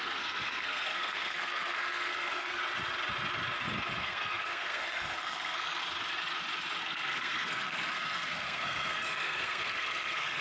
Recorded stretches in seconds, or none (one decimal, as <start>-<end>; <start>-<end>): 2.6-4.0; 5.8-6.8